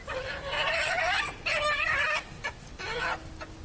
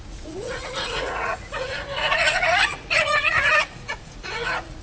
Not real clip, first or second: second